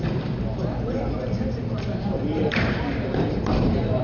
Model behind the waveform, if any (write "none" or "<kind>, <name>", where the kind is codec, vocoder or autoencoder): vocoder, BigVGAN v2